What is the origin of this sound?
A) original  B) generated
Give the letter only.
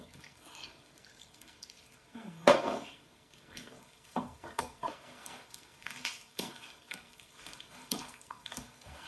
B